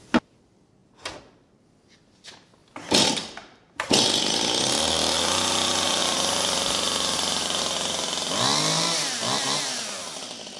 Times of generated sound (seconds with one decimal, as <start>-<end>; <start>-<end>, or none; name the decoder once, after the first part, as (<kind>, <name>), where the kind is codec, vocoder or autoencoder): 2.6-3.9 (vocoder, BigVGAN v2); 6.0-7.6; 8.5-9.1